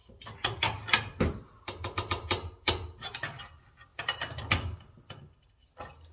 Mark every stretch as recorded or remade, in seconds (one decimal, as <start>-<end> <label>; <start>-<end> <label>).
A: 0.0-6.1 recorded